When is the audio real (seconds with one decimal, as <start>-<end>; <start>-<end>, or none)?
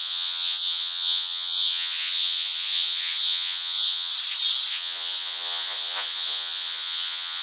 4.1-4.7